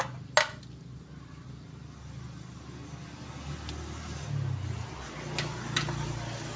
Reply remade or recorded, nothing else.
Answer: recorded